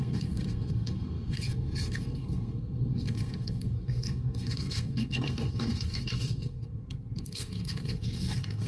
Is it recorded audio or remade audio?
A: remade